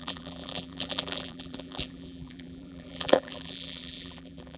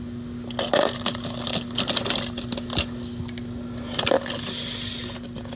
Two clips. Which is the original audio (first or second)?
second